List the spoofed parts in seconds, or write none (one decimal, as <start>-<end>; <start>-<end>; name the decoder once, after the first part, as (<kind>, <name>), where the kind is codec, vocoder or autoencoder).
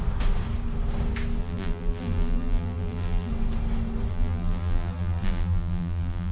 1.4-3.3 (vocoder, BigVGAN v2); 4.1-6.3